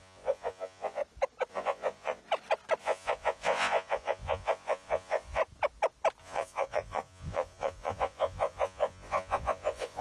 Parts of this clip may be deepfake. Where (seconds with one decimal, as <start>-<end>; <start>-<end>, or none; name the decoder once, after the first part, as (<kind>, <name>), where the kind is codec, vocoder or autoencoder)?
0.0-1.0 (vocoder, Vocos); 1.5-2.2; 2.8-5.4; 6.2-10.0